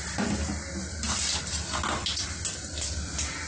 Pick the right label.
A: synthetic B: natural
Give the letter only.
B